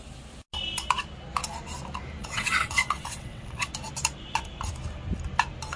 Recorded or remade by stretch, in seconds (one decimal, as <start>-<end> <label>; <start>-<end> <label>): 0.0-2.2 recorded; 2.2-3.7 remade; 3.7-5.8 recorded